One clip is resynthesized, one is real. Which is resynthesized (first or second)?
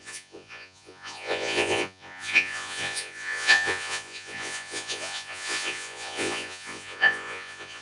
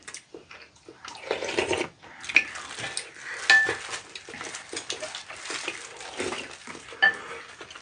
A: first